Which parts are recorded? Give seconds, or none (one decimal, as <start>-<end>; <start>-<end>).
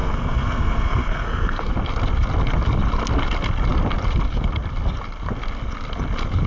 1.7-6.5